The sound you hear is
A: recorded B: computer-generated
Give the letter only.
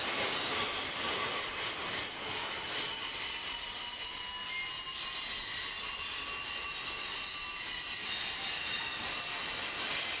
A